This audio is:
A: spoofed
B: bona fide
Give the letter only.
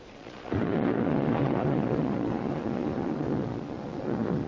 A